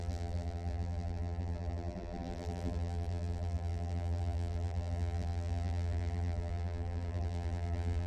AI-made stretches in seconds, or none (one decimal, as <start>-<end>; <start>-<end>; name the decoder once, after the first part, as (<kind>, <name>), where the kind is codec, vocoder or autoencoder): 0.0-8.1 (vocoder, BigVGAN v2)